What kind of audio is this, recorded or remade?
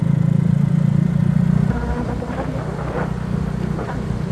recorded